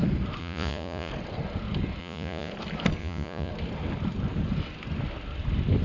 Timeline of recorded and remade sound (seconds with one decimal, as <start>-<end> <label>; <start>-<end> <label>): 0.0-0.4 recorded; 0.4-1.1 remade; 1.1-2.0 recorded; 2.0-2.5 remade; 2.5-3.0 recorded; 3.0-3.5 remade; 3.5-5.8 recorded